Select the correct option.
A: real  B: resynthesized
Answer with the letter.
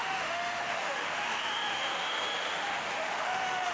B